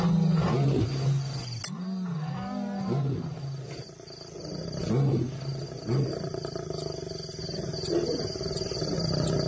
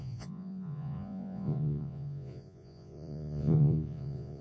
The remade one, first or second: second